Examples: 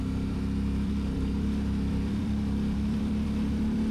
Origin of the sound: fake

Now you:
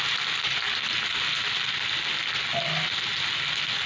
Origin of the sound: real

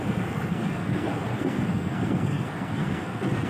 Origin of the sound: fake